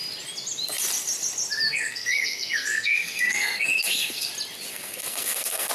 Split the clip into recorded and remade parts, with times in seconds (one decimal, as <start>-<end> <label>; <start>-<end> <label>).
0.0-1.7 recorded; 1.7-4.3 remade; 4.3-4.7 recorded; 4.7-5.7 remade